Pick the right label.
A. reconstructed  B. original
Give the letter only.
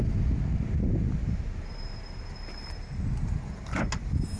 B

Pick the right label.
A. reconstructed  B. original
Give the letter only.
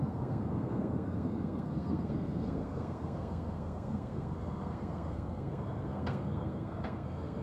A